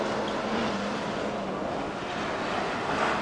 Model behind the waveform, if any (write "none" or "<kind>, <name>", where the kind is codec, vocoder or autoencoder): none